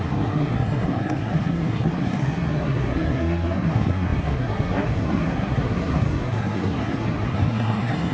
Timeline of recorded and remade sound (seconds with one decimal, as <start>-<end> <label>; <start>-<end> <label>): 0.0-8.1 remade